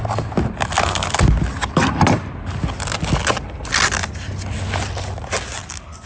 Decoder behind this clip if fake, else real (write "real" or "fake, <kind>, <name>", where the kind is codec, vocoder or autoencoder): real